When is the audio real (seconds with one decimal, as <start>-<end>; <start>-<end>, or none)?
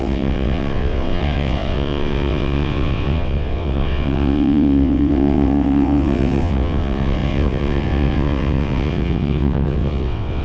none